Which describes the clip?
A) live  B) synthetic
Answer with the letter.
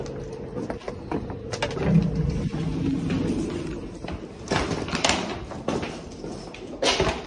A